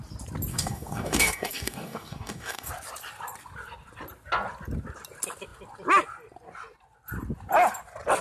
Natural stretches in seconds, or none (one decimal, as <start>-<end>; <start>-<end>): 0.0-0.5; 2.7-8.2